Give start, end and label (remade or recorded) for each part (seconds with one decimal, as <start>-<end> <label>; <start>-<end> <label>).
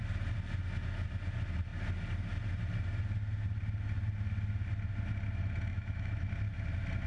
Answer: 0.0-5.7 recorded; 5.7-6.3 remade; 6.3-7.1 recorded